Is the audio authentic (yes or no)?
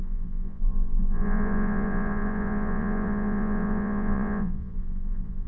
no